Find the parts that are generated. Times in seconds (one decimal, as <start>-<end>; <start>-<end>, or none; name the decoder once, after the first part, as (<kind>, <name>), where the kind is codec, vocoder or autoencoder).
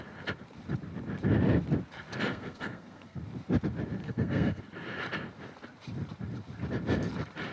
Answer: 2.3-3.2 (codec, SNAC); 4.0-4.6